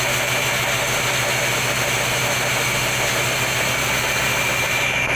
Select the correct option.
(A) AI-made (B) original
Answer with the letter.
B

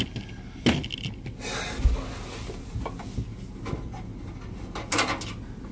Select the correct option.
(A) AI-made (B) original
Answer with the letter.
B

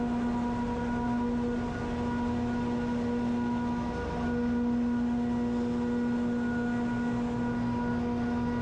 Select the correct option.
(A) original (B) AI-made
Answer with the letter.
A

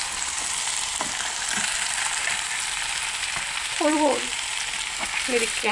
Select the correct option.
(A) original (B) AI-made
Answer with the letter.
A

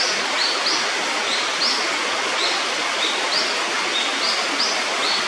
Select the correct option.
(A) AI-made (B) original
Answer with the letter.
B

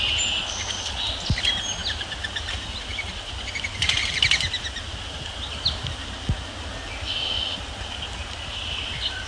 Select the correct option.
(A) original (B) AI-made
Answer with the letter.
A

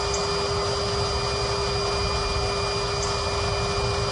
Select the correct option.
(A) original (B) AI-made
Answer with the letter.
A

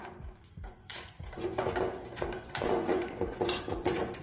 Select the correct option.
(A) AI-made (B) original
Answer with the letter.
A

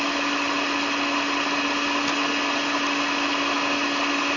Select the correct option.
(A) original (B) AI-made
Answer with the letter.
A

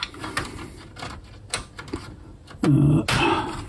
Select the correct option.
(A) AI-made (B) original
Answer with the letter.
B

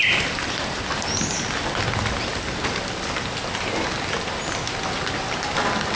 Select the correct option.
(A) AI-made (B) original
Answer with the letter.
B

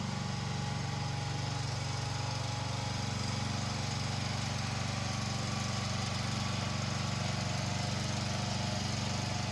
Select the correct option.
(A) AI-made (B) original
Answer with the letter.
B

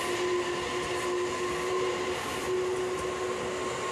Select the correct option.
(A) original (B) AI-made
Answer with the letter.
A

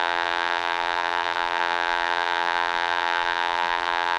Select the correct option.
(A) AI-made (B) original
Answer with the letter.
A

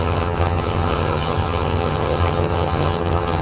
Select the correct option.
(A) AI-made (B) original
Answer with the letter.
A